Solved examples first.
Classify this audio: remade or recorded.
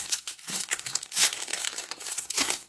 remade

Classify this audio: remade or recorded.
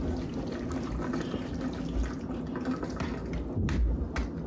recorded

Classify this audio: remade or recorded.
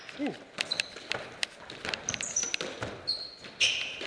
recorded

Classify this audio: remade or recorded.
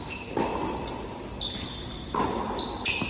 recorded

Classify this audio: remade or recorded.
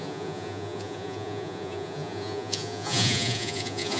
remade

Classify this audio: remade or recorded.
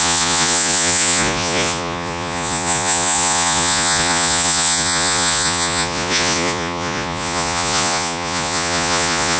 remade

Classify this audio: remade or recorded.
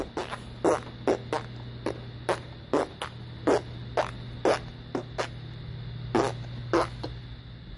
recorded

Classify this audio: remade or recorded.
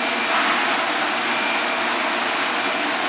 recorded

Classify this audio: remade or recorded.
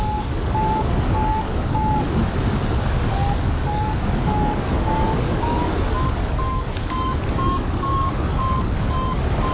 remade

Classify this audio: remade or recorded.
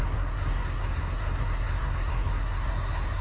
remade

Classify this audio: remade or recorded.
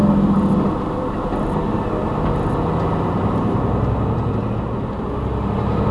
recorded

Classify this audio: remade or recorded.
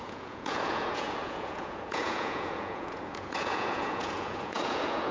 remade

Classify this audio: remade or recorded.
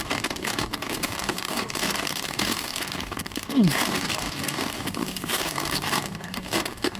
remade